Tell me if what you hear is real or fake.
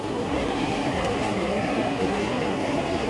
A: fake